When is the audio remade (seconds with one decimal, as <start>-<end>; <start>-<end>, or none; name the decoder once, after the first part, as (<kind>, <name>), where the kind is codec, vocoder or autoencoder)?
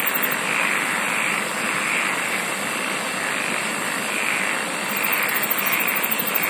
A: none